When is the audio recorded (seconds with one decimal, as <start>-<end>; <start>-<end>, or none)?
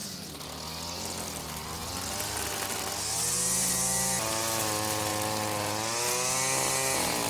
0.0-7.3